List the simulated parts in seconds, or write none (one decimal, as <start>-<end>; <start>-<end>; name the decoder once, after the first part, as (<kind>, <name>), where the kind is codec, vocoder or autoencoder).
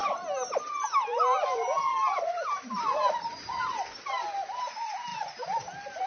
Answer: none